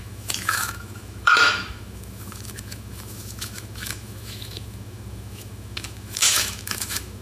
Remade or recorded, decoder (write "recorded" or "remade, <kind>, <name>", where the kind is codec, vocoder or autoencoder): remade, autoencoder, DAC-VAE